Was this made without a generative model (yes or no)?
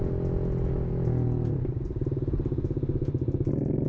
yes